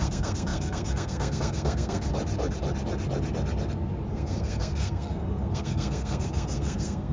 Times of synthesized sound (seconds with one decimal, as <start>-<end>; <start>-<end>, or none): 0.0-2.1; 4.1-7.1